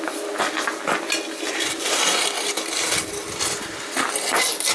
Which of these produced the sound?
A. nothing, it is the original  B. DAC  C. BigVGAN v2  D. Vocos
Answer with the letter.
A